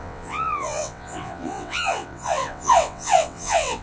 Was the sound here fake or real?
fake